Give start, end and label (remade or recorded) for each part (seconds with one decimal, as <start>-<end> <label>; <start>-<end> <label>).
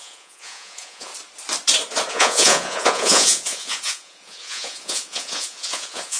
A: 0.0-1.1 remade; 1.1-2.1 recorded; 2.1-6.2 remade